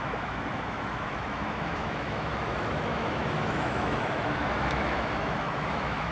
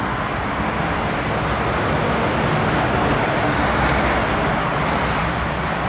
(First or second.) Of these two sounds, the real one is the second